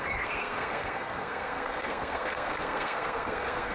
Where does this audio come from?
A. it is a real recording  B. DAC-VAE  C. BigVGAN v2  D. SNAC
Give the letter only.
D